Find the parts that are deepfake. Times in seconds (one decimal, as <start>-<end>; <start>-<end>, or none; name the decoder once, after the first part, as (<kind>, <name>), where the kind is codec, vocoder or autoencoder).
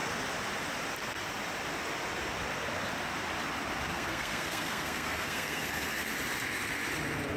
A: 3.9-6.1 (codec, SNAC)